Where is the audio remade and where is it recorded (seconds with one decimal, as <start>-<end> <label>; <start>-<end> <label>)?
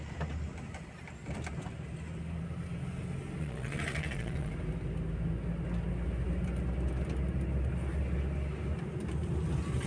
0.0-3.4 recorded; 3.4-4.5 remade; 4.5-9.9 recorded